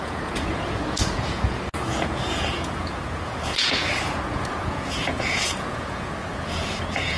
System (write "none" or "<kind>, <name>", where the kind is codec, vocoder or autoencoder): vocoder, Vocos